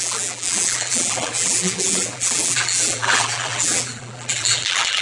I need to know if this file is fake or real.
fake